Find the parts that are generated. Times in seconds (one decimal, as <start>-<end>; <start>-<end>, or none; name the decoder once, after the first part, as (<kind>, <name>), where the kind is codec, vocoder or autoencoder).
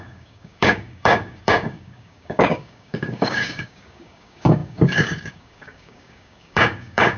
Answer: 0.0-7.2 (codec, DAC)